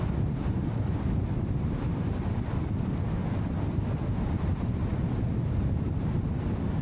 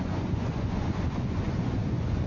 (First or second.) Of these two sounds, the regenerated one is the second